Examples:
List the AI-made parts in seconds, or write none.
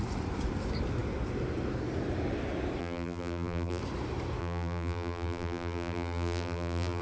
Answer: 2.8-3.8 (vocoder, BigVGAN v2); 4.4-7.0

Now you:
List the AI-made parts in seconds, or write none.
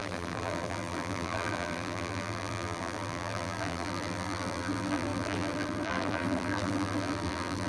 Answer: 0.0-7.7 (vocoder, BigVGAN v2)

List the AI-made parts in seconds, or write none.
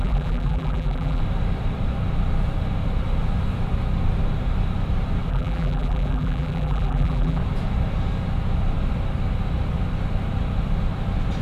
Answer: 0.0-1.2 (vocoder, BigVGAN v2); 5.3-7.4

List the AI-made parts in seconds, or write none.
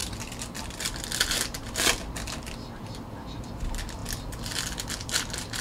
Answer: 0.0-4.0 (vocoder, BigVGAN v2); 4.9-5.6